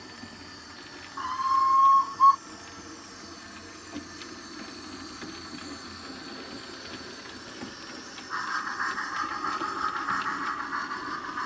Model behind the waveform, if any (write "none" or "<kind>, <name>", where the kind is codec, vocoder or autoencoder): none